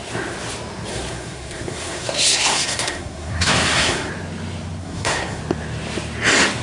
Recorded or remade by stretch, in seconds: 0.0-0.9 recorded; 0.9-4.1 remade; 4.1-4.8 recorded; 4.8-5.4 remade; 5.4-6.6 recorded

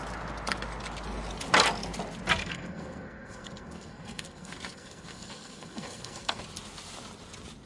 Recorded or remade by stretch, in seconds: 0.0-2.4 recorded; 2.4-6.4 remade; 6.4-7.7 recorded

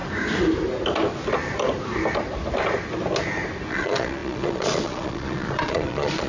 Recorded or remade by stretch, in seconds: 0.0-3.7 recorded; 3.7-6.3 remade

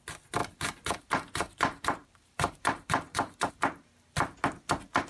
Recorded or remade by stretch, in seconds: 0.0-0.4 recorded; 0.4-3.5 remade; 3.5-5.1 recorded

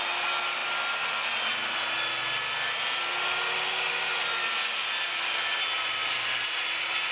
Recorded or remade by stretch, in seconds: 0.0-7.1 recorded

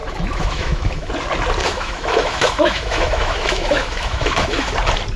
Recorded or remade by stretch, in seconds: 0.0-1.1 remade; 1.1-1.6 recorded; 1.6-4.7 remade; 4.7-5.2 recorded

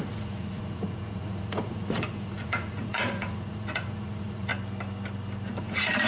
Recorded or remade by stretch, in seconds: 0.0-4.5 remade; 4.5-5.6 recorded; 5.6-6.1 remade